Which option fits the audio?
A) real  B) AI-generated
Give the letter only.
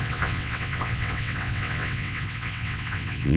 B